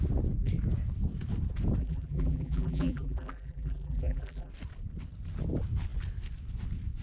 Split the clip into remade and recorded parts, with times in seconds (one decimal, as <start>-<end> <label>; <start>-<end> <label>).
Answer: 0.0-1.8 recorded; 1.8-4.5 remade; 4.5-7.0 recorded